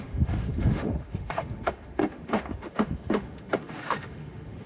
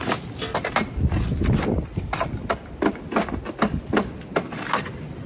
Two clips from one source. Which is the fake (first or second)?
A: first